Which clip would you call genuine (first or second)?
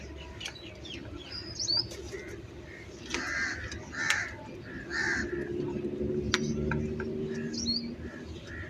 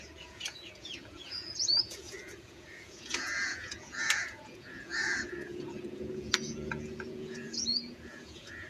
first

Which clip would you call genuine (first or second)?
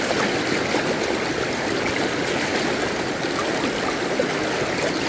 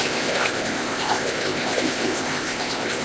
first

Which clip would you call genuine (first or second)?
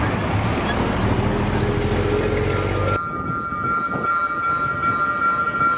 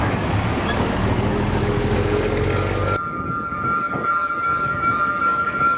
first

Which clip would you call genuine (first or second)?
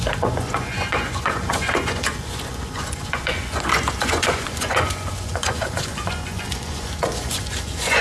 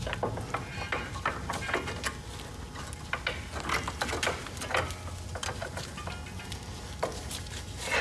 second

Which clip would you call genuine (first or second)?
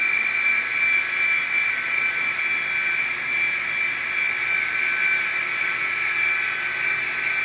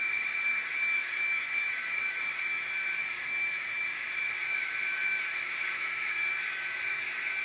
first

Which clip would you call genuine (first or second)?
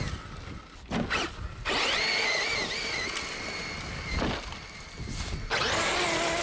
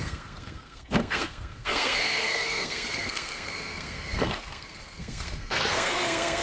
first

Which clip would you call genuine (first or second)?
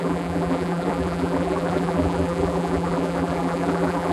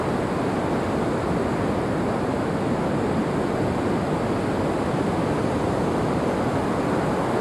second